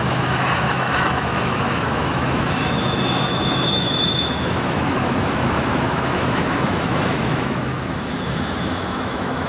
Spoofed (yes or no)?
yes